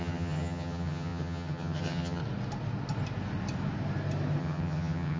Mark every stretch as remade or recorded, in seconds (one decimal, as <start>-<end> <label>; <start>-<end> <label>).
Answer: 0.0-2.2 remade; 2.2-4.4 recorded; 4.4-5.2 remade